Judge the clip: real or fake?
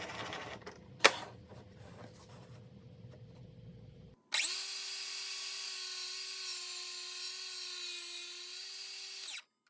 real